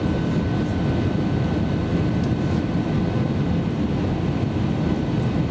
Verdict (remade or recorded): recorded